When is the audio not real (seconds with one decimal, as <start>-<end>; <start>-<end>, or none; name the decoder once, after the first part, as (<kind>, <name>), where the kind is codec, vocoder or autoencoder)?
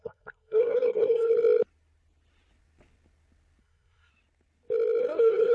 0.0-1.3 (codec, SNAC); 3.6-4.1; 5.0-5.5